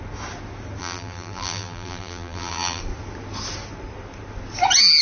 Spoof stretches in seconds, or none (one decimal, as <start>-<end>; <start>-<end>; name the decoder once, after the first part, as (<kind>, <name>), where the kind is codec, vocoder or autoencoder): 0.8-2.8 (vocoder, BigVGAN v2)